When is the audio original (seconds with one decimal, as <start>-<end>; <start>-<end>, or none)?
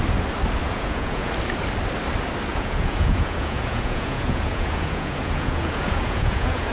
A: 0.0-0.6; 1.3-2.5